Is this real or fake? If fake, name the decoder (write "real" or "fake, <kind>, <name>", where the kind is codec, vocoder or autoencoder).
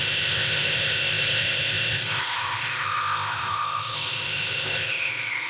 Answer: fake, codec, ZipCodec